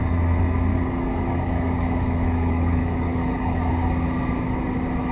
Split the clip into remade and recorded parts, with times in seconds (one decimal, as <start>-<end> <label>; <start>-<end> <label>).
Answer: 0.0-0.7 recorded; 0.7-3.7 remade; 3.7-5.1 recorded